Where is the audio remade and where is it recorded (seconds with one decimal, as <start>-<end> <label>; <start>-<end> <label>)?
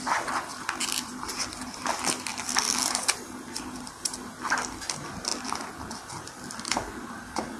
0.0-0.5 remade; 0.5-1.1 recorded; 1.1-2.3 remade; 2.3-3.4 recorded; 3.4-5.3 remade; 5.3-7.6 recorded